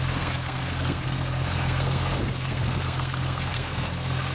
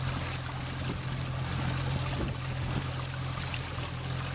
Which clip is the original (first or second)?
second